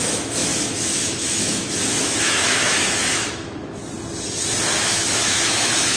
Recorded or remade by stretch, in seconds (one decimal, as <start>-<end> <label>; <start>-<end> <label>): 0.0-3.8 remade; 3.8-4.8 recorded; 4.8-6.0 remade